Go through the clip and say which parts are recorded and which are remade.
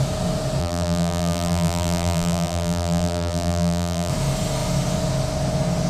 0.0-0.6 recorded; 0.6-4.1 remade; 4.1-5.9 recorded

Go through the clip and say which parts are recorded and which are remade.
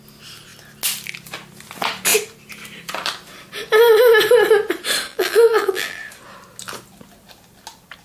0.0-5.1 recorded; 5.1-6.0 remade; 6.0-8.0 recorded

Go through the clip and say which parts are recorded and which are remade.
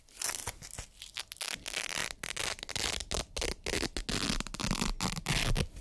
0.0-5.8 recorded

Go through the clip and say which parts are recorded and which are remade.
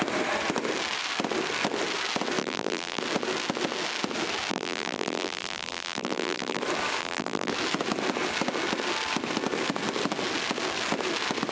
0.0-2.4 recorded; 2.4-3.0 remade; 3.0-4.5 recorded; 4.5-6.6 remade; 6.6-7.0 recorded; 7.0-7.5 remade; 7.5-11.5 recorded